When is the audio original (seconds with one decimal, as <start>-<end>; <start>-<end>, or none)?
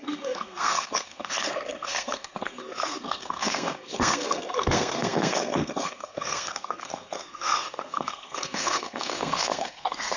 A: none